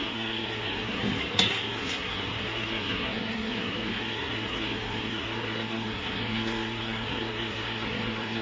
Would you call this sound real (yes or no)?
no